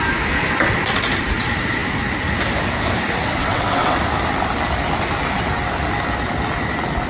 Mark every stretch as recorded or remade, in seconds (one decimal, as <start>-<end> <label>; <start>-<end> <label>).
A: 0.0-3.4 recorded; 3.4-4.0 remade; 4.0-7.1 recorded

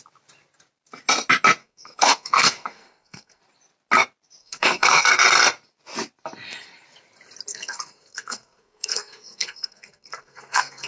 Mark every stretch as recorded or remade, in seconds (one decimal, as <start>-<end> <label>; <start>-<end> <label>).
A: 0.0-1.6 recorded; 1.6-3.4 remade; 3.4-4.4 recorded; 4.4-5.1 remade; 5.1-7.5 recorded; 7.5-10.9 remade

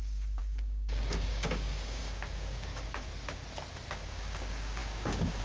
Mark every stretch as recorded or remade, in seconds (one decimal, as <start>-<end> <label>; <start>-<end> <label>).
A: 0.0-3.1 remade; 3.1-3.9 recorded; 3.9-5.4 remade